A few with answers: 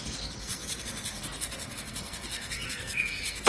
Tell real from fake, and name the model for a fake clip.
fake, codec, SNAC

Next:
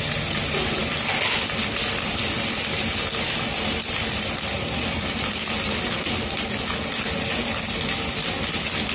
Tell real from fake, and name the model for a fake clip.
real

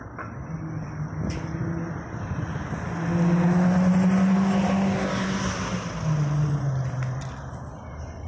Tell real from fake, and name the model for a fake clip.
real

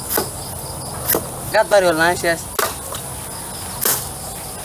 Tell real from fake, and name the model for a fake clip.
real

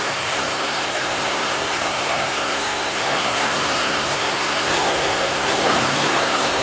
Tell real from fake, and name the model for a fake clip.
fake, codec, SNAC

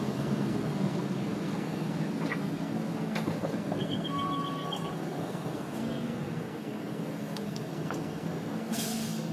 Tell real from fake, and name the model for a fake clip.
fake, codec, SNAC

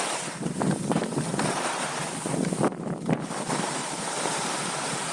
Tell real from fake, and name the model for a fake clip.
real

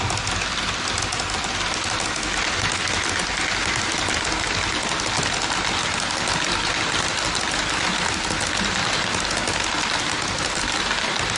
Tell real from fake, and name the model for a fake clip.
real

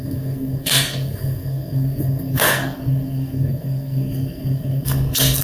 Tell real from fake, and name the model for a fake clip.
fake, codec, SNAC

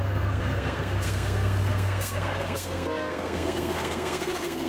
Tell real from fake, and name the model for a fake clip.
fake, codec, SNAC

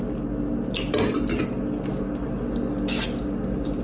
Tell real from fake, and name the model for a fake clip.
real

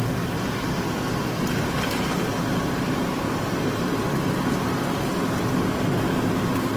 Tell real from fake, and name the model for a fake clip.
real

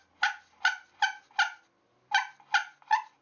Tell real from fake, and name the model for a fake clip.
real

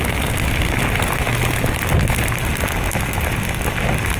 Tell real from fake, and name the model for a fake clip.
real